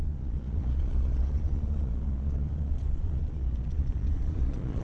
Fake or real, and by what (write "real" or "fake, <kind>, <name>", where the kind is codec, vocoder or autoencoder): fake, vocoder, Vocos